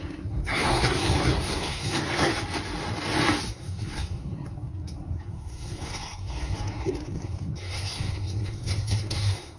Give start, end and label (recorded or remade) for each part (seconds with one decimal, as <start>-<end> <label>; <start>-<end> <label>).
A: 0.0-2.3 remade; 2.3-3.5 recorded; 3.5-9.6 remade